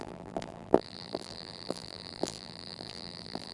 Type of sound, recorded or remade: remade